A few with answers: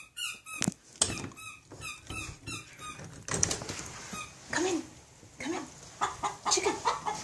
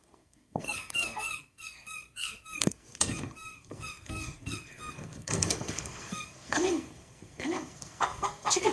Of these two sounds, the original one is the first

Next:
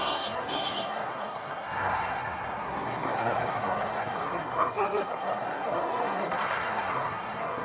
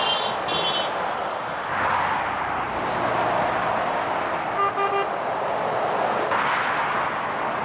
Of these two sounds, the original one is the second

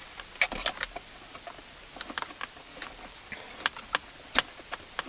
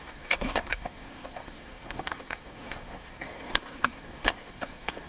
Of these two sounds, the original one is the first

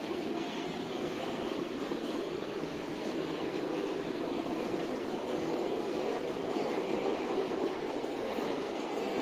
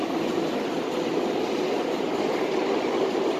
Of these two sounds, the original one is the second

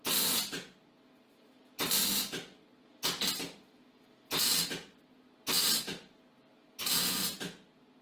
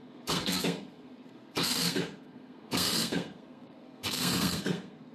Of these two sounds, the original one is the first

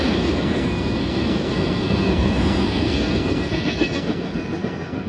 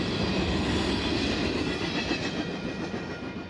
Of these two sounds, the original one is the second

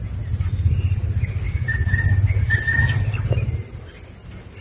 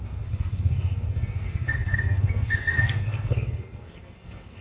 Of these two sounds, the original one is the first